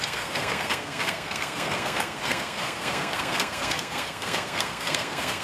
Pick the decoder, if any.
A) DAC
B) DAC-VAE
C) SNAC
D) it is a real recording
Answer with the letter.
C